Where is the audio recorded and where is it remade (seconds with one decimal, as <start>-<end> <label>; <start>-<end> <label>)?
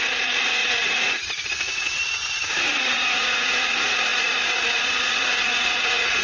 0.0-6.2 remade